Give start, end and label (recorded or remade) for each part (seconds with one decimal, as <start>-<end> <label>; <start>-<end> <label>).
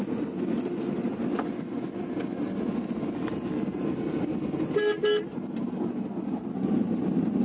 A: 0.0-7.4 recorded